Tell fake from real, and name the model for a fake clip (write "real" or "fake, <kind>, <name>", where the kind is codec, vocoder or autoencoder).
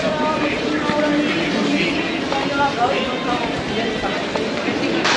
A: real